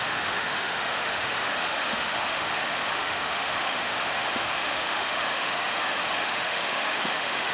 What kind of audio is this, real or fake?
fake